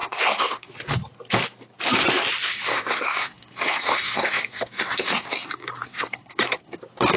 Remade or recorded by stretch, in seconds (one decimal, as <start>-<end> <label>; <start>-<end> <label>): 0.0-0.7 remade; 0.7-2.5 recorded; 2.5-6.8 remade; 6.8-7.2 recorded